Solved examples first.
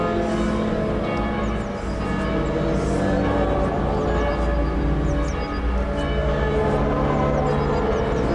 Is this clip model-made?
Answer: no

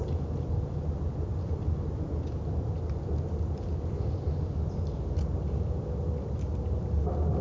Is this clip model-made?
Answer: no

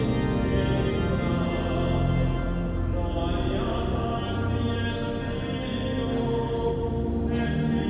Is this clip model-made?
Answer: no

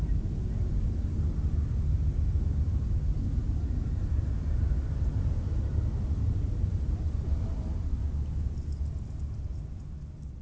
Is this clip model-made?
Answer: no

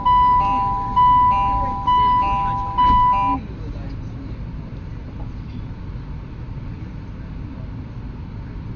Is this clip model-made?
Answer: no